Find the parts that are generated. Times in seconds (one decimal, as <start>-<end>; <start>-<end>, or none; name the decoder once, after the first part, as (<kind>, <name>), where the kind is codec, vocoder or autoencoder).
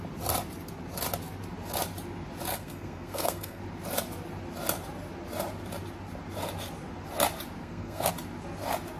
2.5-3.6 (codec, SNAC); 7.6-8.1